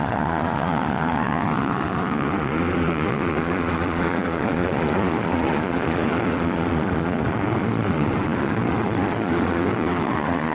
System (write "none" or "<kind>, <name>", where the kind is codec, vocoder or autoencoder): vocoder, Vocos